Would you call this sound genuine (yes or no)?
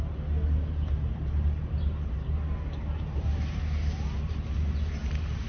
yes